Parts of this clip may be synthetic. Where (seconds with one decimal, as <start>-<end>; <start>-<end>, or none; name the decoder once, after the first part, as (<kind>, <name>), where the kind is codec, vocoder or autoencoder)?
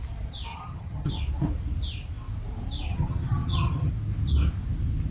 0.5-1.1 (vocoder, HiFi-GAN); 2.9-3.9